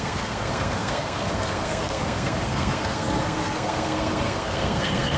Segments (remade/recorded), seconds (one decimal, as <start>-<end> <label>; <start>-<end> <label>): 0.0-5.2 remade